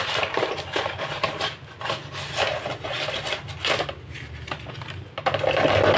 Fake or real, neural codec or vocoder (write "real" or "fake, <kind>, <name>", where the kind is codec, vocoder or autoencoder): real